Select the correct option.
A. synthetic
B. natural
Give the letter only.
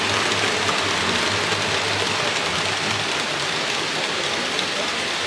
B